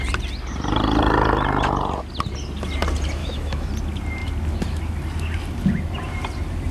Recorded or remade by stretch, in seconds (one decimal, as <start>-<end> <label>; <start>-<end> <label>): 0.0-3.2 recorded; 3.2-3.7 remade; 3.7-6.7 recorded